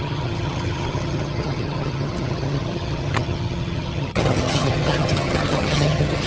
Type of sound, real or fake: fake